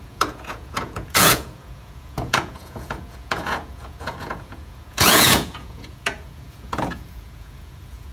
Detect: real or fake fake